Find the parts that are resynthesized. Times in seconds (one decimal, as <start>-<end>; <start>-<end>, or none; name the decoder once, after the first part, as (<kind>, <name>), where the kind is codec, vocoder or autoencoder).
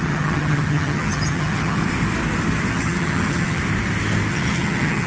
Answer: 0.0-1.8 (vocoder, HiFi-GAN); 2.7-3.6; 4.3-5.1